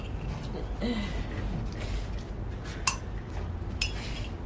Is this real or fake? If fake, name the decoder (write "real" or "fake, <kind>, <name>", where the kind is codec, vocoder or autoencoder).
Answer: real